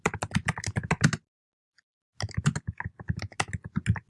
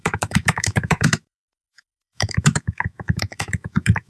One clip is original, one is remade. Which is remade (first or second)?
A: second